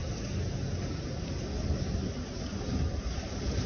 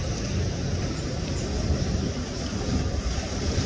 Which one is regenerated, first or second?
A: second